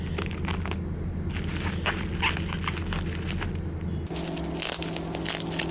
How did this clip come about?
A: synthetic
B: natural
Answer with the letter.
B